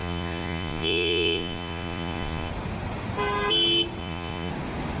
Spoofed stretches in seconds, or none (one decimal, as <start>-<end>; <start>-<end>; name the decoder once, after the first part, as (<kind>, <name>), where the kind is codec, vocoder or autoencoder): 0.0-2.5 (vocoder, Vocos); 4.0-4.5